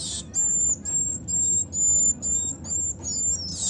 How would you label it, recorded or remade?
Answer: recorded